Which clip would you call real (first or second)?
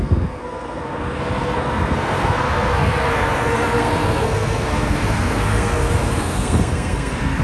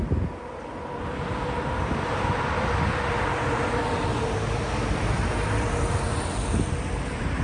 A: second